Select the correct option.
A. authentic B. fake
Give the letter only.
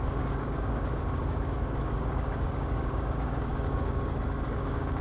B